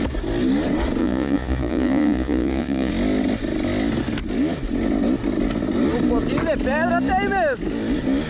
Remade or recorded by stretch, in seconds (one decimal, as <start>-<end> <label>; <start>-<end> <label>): 0.0-1.0 recorded; 1.0-2.9 remade; 2.9-8.3 recorded